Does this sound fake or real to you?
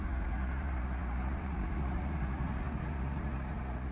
fake